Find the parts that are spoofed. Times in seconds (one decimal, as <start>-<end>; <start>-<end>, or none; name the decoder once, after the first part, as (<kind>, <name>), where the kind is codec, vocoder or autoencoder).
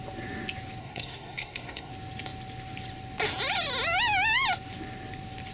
0.8-1.9 (codec, SNAC)